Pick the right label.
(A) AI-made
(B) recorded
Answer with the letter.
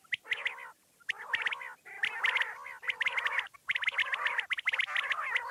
B